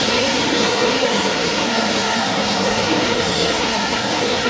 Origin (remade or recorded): remade